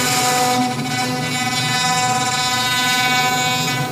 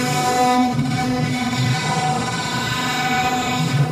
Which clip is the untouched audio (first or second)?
first